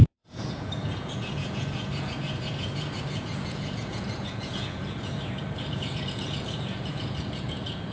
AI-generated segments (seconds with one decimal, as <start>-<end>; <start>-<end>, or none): 0.0-7.9